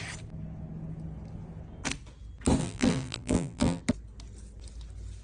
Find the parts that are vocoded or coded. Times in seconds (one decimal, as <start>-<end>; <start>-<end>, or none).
2.6-3.8